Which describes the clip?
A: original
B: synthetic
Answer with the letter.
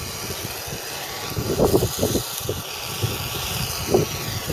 A